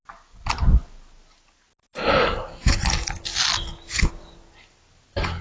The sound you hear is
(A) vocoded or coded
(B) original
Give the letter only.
B